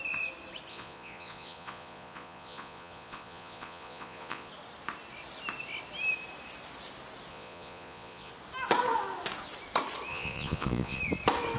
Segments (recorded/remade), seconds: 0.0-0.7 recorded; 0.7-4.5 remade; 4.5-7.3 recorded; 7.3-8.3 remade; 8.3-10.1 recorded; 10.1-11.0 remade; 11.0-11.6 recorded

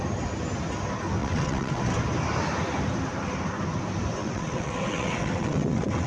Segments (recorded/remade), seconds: 0.0-1.2 recorded; 1.2-1.8 remade; 1.8-4.2 recorded; 4.2-6.1 remade

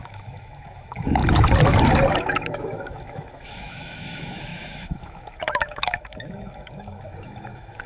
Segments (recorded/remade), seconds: 0.0-1.2 remade; 1.2-2.1 recorded; 2.1-7.9 remade

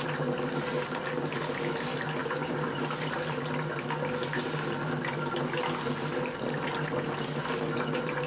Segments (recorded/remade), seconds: 0.0-2.2 recorded; 2.2-2.7 remade; 2.7-8.3 recorded

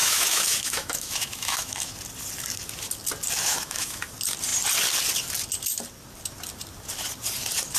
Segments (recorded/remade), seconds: 0.0-1.9 remade; 1.9-3.5 recorded; 3.5-4.1 remade; 4.1-7.8 recorded

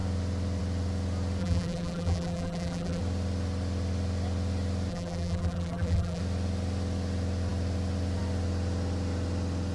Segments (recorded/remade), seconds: 0.0-1.4 recorded; 1.4-3.0 remade; 3.0-4.9 recorded; 4.9-6.2 remade; 6.2-9.7 recorded